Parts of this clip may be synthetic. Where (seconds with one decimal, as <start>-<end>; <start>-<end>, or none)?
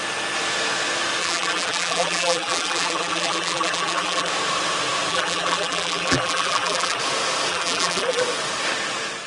1.2-4.3; 5.1-7.0; 7.5-8.2